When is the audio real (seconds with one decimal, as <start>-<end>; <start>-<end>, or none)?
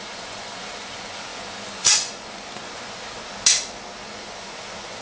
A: 3.2-4.0